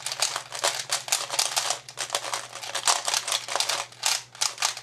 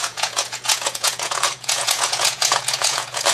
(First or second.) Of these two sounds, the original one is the first